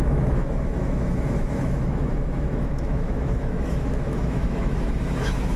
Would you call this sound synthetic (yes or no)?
yes